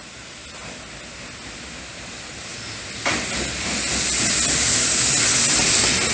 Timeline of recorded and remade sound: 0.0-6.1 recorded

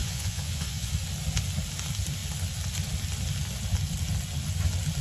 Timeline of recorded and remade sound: 0.0-0.9 remade; 0.9-5.0 recorded

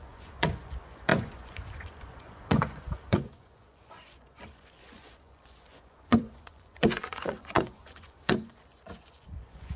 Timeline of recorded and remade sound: 0.0-9.8 remade

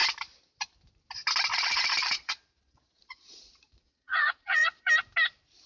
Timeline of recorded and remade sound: 0.0-1.5 recorded; 1.5-4.9 remade; 4.9-5.7 recorded